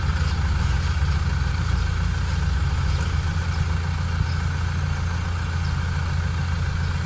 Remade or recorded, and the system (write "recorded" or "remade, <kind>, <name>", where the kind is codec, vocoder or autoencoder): recorded